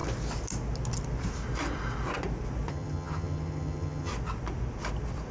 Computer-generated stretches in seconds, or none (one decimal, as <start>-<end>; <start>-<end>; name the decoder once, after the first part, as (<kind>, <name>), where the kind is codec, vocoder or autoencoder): 2.7-4.1 (vocoder, HiFi-GAN)